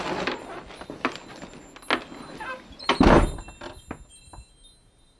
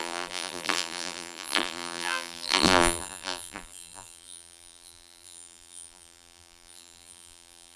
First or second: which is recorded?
first